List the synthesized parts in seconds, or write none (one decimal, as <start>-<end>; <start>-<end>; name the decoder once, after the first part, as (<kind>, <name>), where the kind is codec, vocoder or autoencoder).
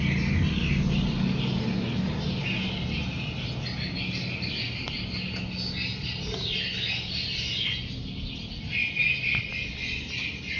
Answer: none